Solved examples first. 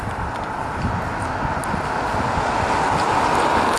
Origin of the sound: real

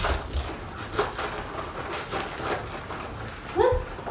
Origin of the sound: real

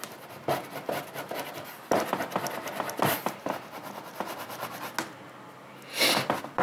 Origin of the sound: real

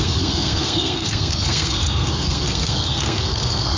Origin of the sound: fake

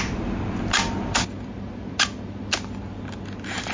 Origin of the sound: real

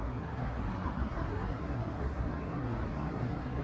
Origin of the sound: fake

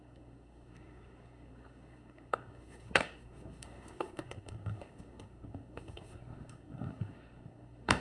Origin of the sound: fake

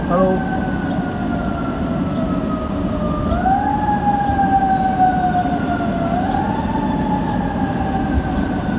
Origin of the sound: real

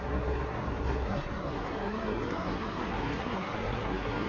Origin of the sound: fake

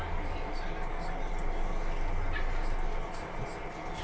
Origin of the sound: real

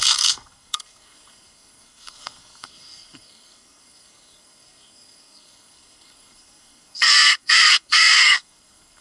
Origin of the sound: fake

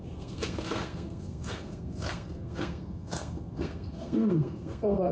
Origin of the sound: fake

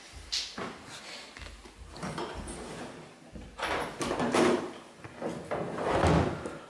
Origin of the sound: real